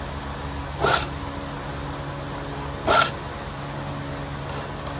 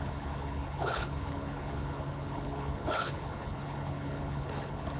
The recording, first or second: first